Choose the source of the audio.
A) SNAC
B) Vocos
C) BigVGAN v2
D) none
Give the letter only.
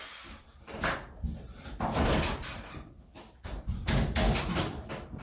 C